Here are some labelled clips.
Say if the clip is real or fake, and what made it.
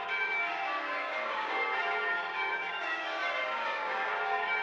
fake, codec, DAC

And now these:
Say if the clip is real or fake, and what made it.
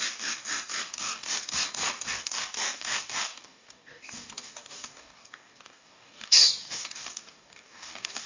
fake, codec, DAC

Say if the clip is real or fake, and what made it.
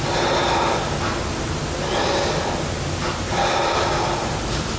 real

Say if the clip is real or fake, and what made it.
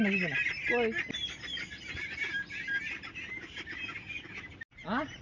real